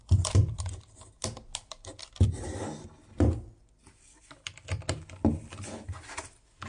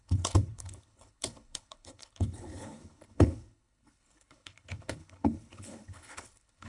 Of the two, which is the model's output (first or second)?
second